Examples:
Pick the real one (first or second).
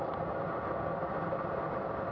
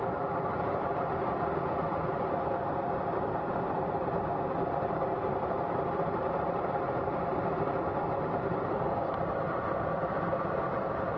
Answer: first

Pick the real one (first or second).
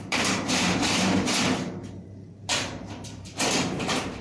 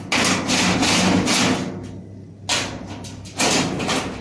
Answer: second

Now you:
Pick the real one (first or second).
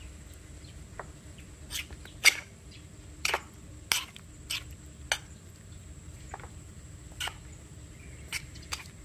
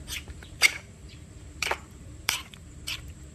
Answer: first